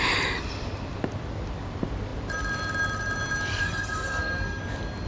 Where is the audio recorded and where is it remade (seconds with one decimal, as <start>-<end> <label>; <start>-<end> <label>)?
0.0-3.5 recorded; 3.5-4.6 remade; 4.6-5.1 recorded